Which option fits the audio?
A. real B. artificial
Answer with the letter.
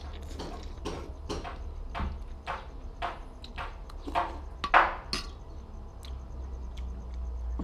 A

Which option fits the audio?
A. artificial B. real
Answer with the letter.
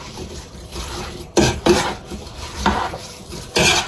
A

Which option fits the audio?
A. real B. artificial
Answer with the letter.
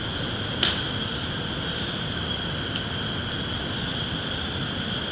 A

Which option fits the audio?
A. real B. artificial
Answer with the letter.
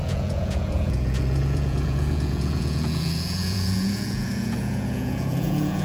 B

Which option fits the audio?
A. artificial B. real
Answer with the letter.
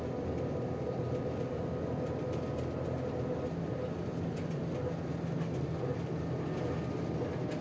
B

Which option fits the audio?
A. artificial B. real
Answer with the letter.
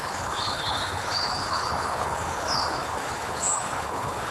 A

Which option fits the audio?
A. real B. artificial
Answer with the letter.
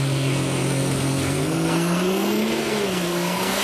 B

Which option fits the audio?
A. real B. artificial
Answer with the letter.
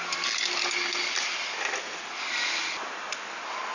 A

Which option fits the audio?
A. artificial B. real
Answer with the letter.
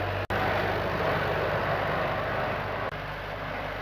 B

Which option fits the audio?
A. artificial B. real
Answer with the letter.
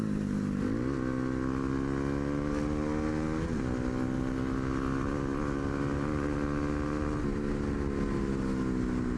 B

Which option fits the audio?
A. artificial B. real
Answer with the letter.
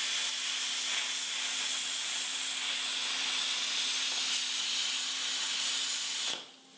B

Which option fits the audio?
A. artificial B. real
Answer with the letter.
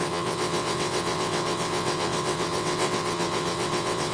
A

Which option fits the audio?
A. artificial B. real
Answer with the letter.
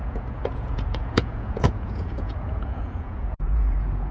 A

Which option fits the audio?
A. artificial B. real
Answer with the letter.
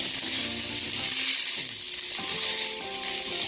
B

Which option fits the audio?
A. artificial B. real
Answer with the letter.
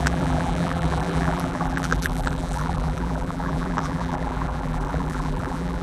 A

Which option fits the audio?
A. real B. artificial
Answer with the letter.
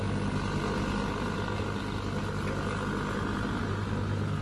A